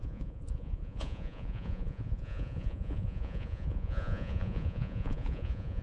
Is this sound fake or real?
fake